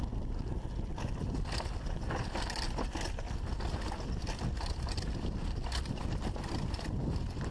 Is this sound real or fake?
real